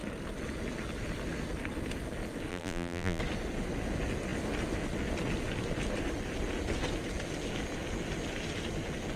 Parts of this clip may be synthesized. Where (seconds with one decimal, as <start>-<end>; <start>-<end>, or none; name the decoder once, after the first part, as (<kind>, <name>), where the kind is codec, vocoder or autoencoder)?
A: 2.5-3.2 (vocoder, BigVGAN v2)